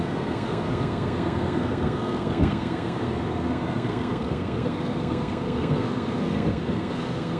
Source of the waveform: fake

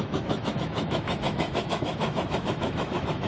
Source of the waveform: fake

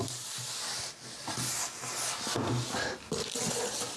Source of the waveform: real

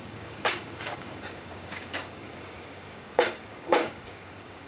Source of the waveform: fake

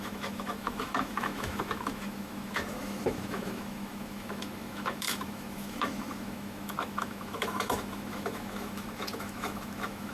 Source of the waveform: fake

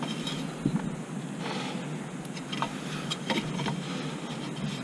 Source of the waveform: real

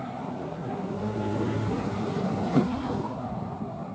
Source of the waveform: fake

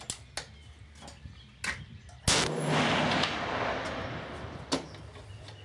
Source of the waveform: real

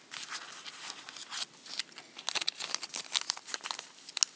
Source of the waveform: real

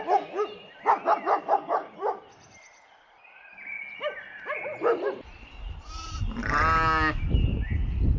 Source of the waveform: real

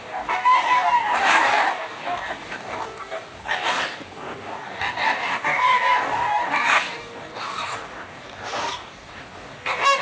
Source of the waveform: fake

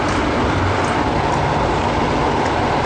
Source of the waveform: fake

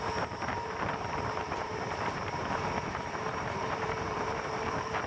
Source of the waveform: fake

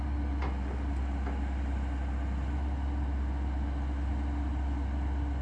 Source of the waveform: real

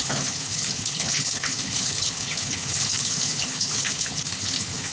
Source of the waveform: fake